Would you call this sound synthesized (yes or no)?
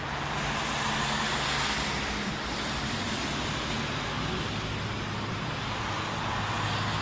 no